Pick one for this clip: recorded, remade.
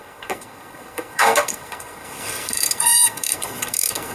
remade